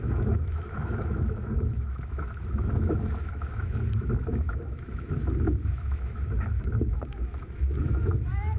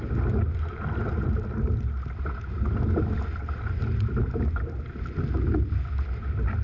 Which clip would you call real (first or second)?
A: second